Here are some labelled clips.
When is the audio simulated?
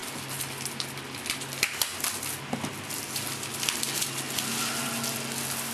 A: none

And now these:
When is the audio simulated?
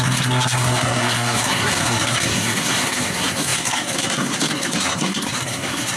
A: 0.0-6.0 (codec, SNAC)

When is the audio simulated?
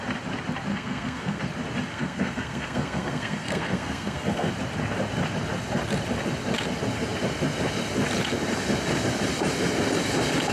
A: 0.7-1.4 (codec, SNAC); 1.9-4.5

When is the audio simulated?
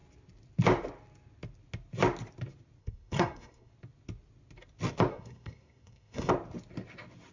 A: 2.8-3.7 (codec, SNAC); 5.1-6.3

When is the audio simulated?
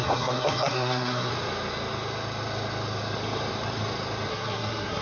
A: 0.0-1.3 (codec, SNAC); 4.3-5.0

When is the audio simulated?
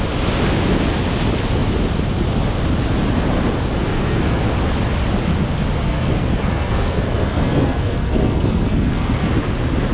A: 3.9-4.4 (codec, SNAC); 5.8-9.3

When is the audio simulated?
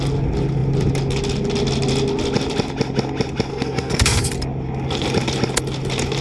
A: 3.5-4.3 (codec, SNAC)